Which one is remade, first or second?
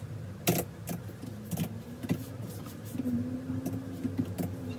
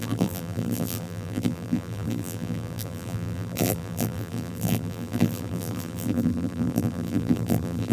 second